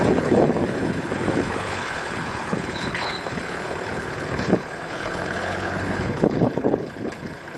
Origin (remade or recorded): remade